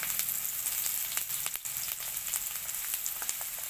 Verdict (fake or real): real